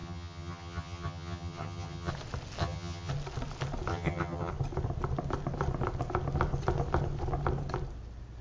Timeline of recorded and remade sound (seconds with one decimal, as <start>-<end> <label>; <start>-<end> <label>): 0.0-2.1 remade; 2.1-2.6 recorded; 2.6-3.1 remade; 3.1-3.9 recorded; 3.9-4.5 remade; 4.5-8.4 recorded